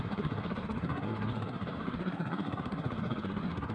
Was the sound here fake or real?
fake